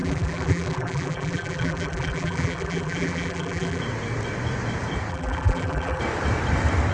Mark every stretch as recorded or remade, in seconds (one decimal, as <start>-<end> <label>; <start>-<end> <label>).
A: 0.0-3.8 remade; 3.8-5.1 recorded; 5.1-6.0 remade; 6.0-6.9 recorded